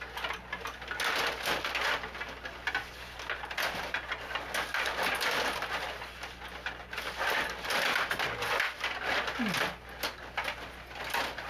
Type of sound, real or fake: real